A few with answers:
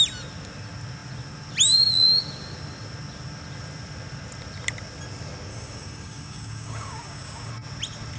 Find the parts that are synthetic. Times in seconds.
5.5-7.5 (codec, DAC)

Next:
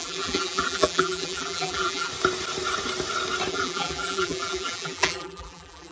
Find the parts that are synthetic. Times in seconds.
0.0-2.1 (vocoder, BigVGAN v2); 3.5-5.9

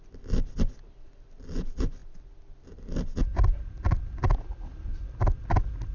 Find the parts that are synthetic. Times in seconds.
none